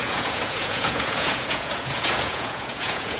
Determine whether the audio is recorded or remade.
remade